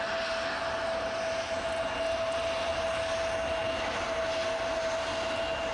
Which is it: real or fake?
real